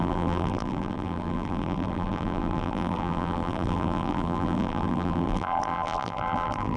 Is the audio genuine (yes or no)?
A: no